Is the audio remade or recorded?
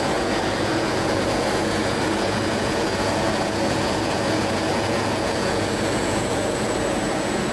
remade